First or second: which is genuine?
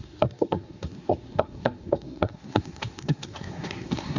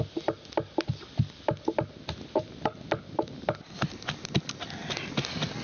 second